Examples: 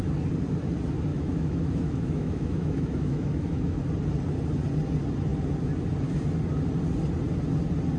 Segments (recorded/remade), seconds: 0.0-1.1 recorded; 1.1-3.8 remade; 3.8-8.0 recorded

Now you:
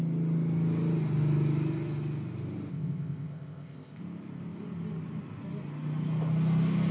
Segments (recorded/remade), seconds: 0.0-2.7 recorded; 2.7-4.0 remade; 4.0-6.9 recorded